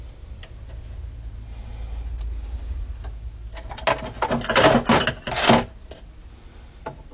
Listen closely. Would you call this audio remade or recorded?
recorded